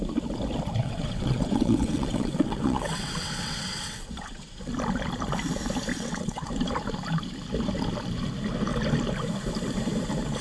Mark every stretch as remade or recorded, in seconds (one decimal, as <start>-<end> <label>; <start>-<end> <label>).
0.0-0.8 recorded; 0.8-4.7 remade; 4.7-5.9 recorded; 5.9-6.5 remade; 6.5-10.4 recorded